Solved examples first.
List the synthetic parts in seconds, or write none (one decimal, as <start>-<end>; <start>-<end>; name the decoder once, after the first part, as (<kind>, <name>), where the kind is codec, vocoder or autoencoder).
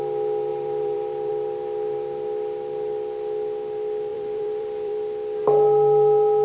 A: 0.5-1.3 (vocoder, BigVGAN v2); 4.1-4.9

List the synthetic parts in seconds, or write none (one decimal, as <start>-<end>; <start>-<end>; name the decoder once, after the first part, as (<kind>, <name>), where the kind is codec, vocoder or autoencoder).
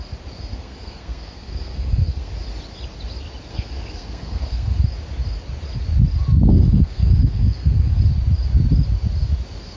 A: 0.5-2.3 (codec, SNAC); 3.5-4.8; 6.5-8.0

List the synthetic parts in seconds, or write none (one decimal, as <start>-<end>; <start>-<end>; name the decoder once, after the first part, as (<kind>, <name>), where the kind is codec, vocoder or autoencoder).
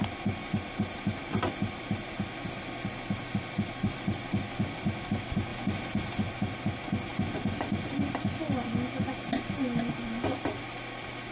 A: 0.4-5.1 (vocoder, BigVGAN v2); 5.5-6.2; 7.1-8.7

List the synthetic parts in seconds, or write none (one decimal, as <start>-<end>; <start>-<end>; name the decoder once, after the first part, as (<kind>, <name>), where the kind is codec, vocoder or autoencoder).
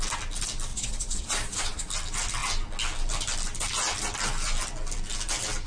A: 0.7-1.9 (vocoder, Vocos)